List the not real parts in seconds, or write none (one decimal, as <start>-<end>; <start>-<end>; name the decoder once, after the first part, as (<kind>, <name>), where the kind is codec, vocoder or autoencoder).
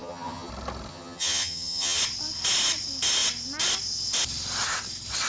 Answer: 0.0-0.5 (vocoder, HiFi-GAN); 0.9-2.0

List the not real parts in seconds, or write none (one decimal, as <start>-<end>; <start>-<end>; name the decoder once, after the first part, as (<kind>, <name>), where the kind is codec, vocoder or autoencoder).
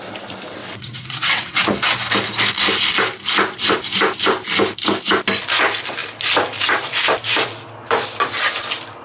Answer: 0.6-1.7 (vocoder, WaveNeXt)